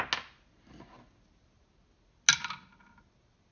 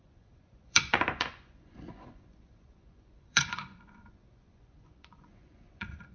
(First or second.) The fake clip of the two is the second